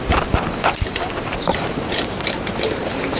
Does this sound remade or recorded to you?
remade